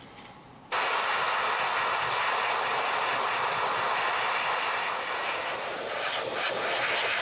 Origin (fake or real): fake